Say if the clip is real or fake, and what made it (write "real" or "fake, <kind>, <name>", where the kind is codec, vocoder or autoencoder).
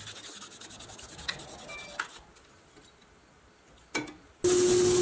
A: real